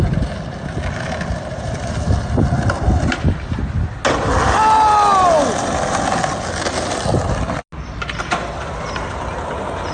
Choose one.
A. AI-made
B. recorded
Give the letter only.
B